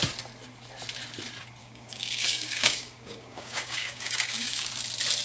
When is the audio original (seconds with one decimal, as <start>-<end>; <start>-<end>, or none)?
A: 0.0-1.6; 4.7-5.2